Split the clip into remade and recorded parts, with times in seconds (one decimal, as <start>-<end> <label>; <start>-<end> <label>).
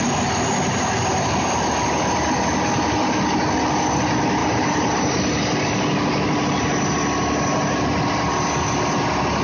0.0-4.4 recorded; 4.4-5.2 remade; 5.2-9.4 recorded